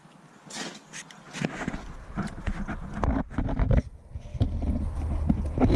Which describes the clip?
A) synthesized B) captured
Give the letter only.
B